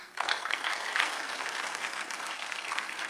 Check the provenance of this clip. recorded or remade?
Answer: remade